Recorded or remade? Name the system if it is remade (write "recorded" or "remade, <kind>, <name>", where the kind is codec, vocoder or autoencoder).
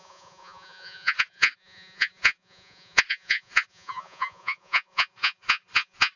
remade, vocoder, Vocos